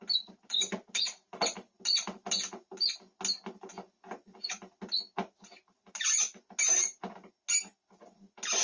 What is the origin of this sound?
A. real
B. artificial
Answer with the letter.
A